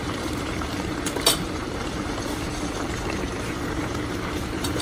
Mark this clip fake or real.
fake